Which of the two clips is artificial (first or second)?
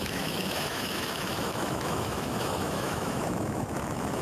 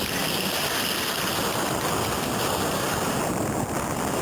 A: first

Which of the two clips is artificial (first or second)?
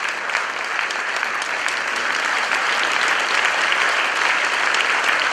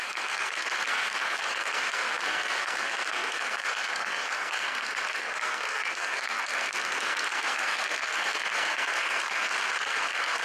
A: second